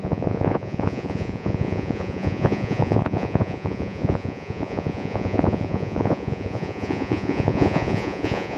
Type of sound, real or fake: fake